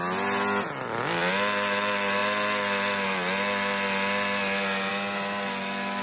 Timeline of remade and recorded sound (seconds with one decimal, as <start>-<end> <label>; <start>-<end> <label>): 0.0-6.0 recorded